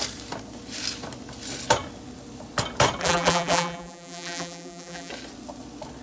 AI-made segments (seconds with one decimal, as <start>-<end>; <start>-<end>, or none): 3.0-5.1